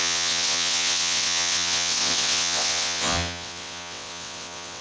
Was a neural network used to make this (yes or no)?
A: yes